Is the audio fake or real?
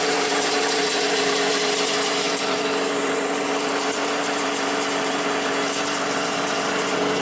fake